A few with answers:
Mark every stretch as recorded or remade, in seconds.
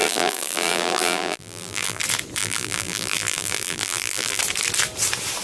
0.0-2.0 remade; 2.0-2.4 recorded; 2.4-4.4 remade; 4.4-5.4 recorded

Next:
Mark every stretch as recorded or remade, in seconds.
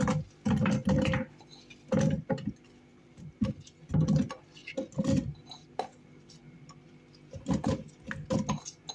0.0-2.9 recorded; 2.9-3.8 remade; 3.8-4.6 recorded; 4.6-7.0 remade; 7.0-8.9 recorded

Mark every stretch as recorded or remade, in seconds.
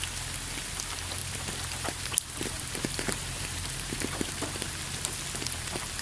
0.0-1.2 recorded; 1.2-4.8 remade; 4.8-6.0 recorded